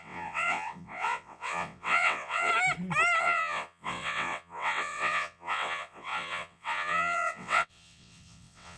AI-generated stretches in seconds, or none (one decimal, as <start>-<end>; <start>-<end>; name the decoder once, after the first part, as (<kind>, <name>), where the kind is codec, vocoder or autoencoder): 0.0-2.5 (vocoder, WaveNeXt); 3.2-8.8